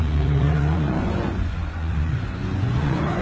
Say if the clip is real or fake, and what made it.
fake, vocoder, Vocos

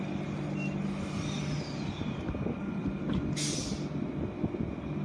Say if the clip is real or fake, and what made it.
real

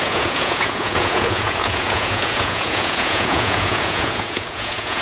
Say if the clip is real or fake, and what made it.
fake, vocoder, Vocos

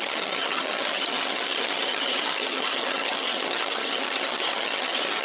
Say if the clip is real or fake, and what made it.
fake, vocoder, HiFi-GAN